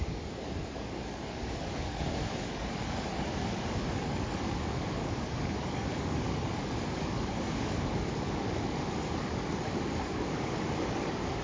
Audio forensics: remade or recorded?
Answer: remade